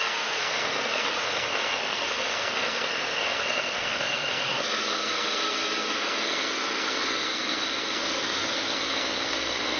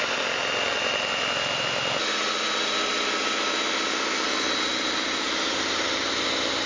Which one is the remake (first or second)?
first